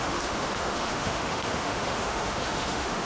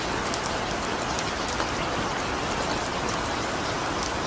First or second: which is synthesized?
first